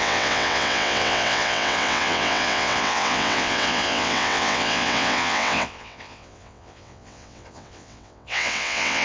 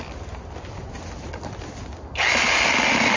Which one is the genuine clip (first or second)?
second